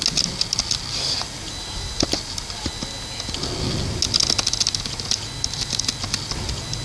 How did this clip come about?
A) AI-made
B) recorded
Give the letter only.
B